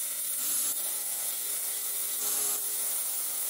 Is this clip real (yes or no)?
no